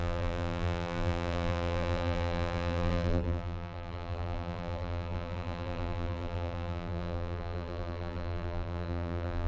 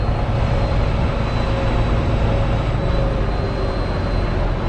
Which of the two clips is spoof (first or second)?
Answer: first